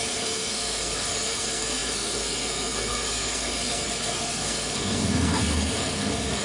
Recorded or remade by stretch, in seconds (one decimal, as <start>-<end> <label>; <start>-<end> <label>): 0.0-6.4 remade